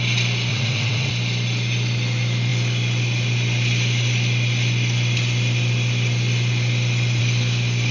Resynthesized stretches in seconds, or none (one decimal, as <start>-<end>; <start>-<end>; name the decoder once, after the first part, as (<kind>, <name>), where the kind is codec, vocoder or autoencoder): 0.5-1.1 (vocoder, WaveNeXt)